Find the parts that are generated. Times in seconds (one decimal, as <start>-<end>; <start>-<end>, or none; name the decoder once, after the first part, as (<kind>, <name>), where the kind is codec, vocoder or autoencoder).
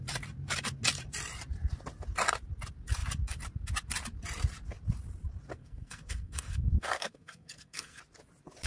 5.5-8.0 (codec, SNAC)